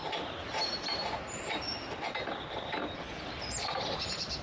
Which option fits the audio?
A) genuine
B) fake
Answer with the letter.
A